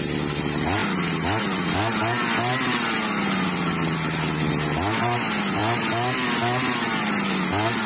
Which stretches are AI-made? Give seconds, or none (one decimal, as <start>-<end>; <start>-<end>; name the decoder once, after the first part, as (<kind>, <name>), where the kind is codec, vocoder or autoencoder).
none